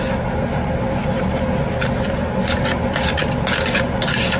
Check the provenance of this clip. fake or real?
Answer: real